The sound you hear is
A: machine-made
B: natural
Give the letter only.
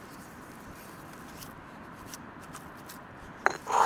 A